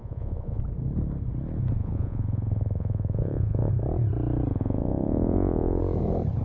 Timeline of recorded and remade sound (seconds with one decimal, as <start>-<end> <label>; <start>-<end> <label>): 0.0-0.6 remade; 0.6-1.8 recorded; 1.8-3.7 remade; 3.7-4.5 recorded; 4.5-5.8 remade; 5.8-6.4 recorded